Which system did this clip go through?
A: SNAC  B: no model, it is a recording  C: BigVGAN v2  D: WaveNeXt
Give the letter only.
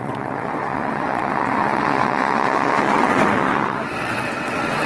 D